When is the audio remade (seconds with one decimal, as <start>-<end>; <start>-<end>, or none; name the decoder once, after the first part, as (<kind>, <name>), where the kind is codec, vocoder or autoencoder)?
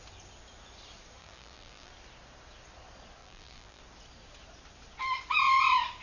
1.2-1.9 (vocoder, BigVGAN v2); 3.2-3.8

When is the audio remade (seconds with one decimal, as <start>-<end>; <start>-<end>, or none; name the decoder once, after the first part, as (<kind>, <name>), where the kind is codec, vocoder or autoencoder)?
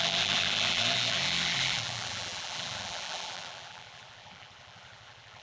0.0-5.4 (vocoder, BigVGAN v2)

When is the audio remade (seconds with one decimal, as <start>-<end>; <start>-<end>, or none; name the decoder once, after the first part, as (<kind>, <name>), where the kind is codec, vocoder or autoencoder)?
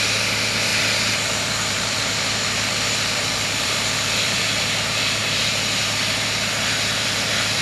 0.7-4.4 (vocoder, BigVGAN v2)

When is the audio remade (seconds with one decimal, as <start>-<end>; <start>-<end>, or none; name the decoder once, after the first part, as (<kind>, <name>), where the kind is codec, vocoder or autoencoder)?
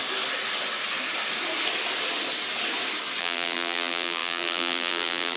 3.2-5.4 (vocoder, BigVGAN v2)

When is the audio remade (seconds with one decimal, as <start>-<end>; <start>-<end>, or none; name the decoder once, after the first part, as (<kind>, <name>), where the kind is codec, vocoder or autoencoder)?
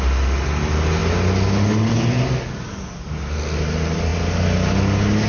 none